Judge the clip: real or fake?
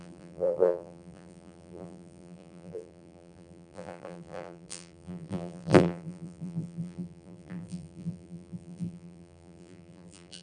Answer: fake